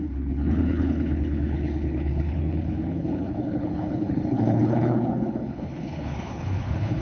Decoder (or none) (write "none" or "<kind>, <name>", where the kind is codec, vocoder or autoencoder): codec, HILCodec